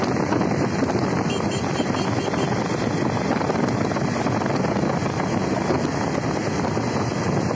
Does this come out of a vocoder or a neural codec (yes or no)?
no